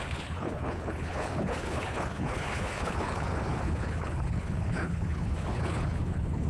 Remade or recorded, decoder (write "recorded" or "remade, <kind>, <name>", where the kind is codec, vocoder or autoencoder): remade, codec, HILCodec